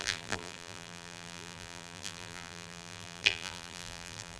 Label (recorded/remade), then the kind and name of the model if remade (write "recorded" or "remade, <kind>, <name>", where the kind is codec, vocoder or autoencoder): remade, vocoder, BigVGAN v2